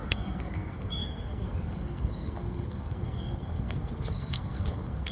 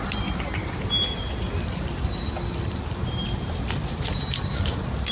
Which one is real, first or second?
second